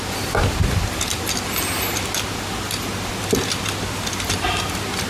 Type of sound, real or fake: real